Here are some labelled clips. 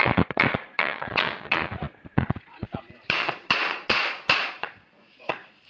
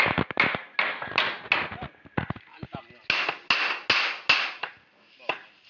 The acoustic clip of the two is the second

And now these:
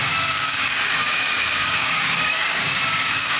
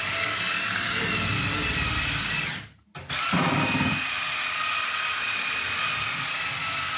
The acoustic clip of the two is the second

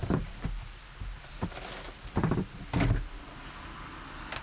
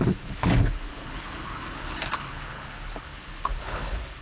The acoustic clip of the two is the first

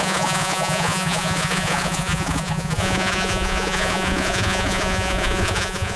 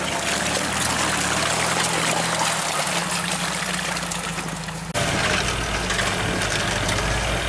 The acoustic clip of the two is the second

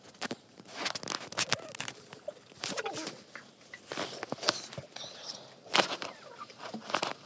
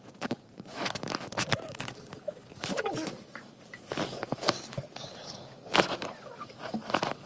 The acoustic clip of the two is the first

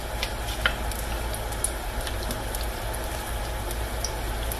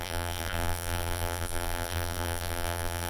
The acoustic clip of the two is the first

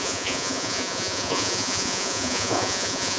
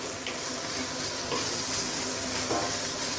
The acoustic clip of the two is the second